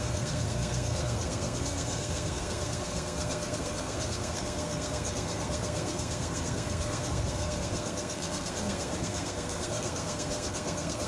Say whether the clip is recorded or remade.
remade